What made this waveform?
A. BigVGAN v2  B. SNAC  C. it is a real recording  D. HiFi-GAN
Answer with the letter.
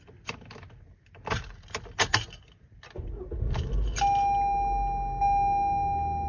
C